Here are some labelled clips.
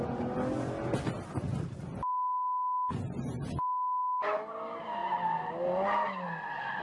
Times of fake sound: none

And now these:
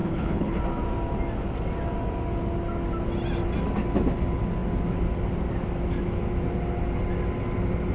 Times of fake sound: 0.0-0.6 (codec, HILCodec)

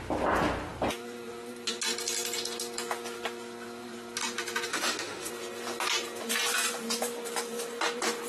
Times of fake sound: 4.7-5.3 (autoencoder, DAC-VAE)